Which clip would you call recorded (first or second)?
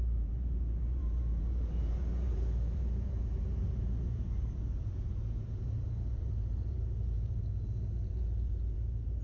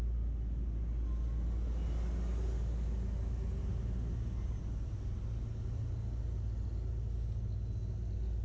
second